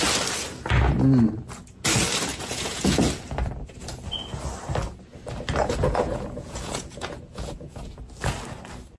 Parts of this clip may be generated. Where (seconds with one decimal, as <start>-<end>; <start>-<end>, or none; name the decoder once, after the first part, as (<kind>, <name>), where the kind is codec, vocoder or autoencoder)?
2.3-3.0 (vocoder, Vocos); 5.6-8.0